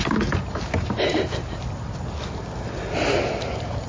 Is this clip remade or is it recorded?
recorded